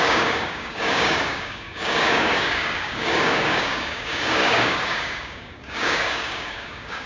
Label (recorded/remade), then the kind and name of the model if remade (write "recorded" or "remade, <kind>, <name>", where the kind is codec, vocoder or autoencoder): remade, codec, DAC